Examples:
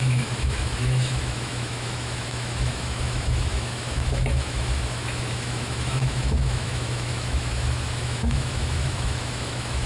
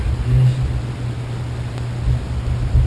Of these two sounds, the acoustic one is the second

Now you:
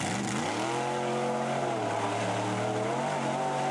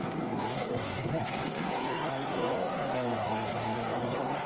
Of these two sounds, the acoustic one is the first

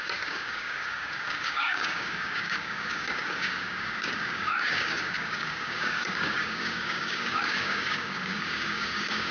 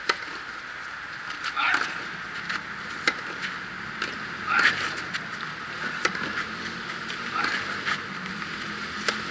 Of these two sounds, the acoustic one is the second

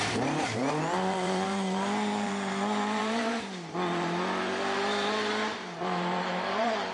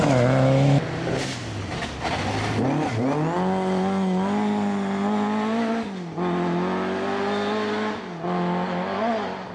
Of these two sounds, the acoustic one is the second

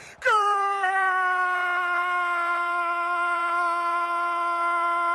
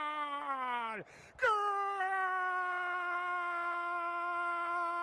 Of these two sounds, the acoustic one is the second